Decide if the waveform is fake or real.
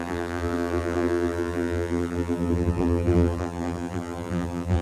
fake